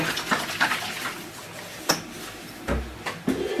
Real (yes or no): yes